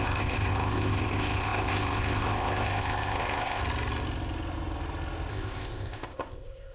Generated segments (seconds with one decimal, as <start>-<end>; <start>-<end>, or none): 0.0-3.6; 5.3-6.7